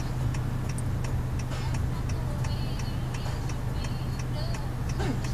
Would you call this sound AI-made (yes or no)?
no